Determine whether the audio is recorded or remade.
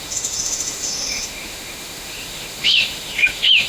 remade